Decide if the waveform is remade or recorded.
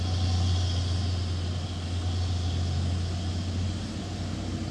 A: recorded